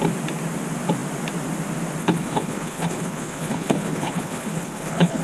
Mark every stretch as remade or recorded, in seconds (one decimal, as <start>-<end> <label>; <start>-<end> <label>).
0.0-2.0 recorded; 2.0-5.2 remade